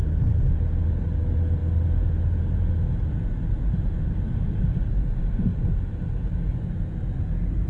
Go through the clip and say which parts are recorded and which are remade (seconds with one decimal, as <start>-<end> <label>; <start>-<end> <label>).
0.0-7.7 recorded